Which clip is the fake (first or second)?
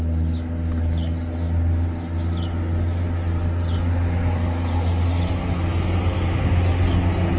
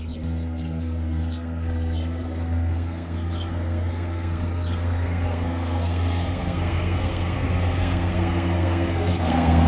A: second